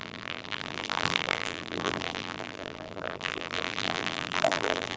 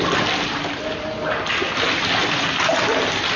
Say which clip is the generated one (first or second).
first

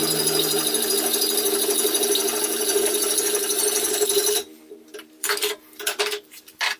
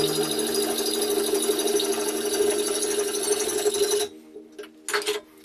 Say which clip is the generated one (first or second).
first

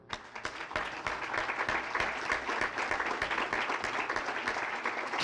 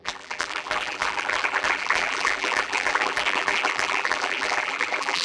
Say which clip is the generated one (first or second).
second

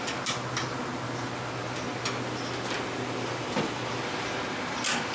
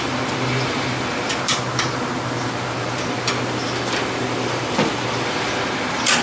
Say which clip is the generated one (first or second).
second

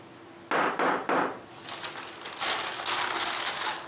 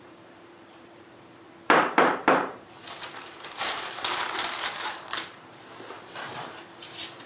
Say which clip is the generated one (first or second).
second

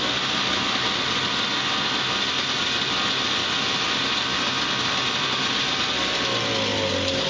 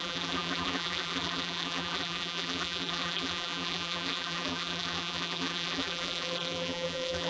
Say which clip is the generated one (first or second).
second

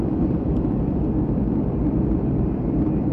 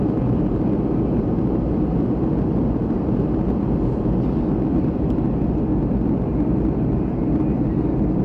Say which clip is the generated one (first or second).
first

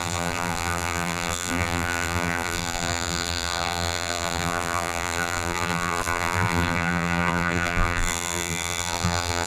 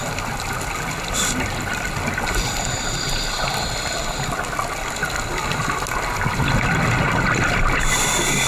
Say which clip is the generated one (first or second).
first